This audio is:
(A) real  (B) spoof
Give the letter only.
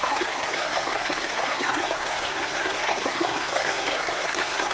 B